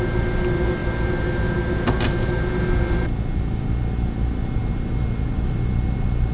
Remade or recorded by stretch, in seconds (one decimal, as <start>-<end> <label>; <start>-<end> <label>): 0.0-6.3 recorded